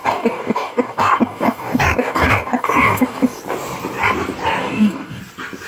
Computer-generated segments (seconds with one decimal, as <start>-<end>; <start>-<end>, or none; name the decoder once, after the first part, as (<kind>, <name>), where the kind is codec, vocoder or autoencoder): 0.0-3.4 (codec, DAC); 4.6-5.2